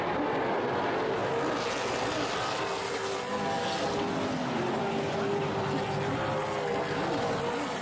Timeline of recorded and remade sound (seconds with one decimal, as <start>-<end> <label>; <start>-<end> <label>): 0.0-7.8 recorded